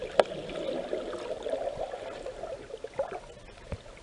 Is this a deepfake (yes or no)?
no